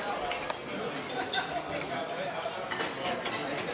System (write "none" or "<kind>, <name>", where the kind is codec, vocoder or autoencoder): none